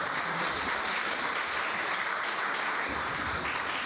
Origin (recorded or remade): remade